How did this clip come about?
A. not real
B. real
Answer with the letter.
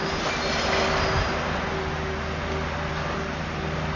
B